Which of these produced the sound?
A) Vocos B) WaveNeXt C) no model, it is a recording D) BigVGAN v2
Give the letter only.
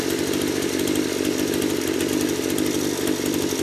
C